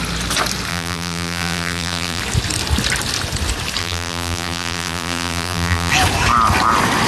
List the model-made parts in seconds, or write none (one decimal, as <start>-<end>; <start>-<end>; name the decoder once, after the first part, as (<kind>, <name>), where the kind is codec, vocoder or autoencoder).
0.7-2.2 (vocoder, BigVGAN v2); 3.8-5.9